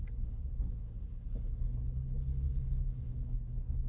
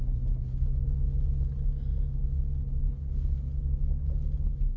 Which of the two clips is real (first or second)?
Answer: second